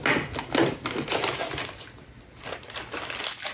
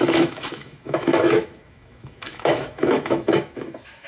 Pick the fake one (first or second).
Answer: second